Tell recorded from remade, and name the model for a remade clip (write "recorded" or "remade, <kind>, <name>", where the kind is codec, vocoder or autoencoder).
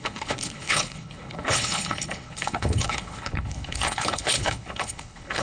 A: remade, codec, HILCodec